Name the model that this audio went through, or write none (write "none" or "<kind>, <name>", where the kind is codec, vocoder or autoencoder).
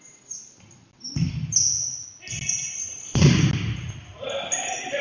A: none